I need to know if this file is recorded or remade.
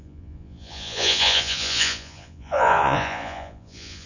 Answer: remade